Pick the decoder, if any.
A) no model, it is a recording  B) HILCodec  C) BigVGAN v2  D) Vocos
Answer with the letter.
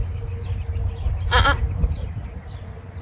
A